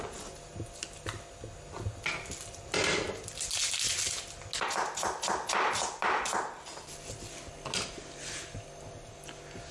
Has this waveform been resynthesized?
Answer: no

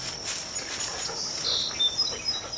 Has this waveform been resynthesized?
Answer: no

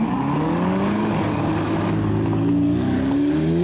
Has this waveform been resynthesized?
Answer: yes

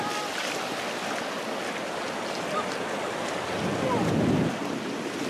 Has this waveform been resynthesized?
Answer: no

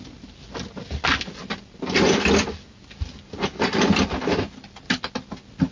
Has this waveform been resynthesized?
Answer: no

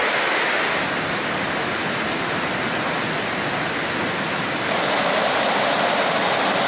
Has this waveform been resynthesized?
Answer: no